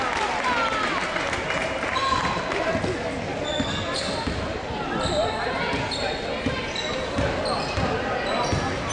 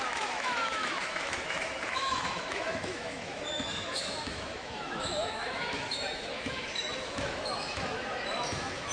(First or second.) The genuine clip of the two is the first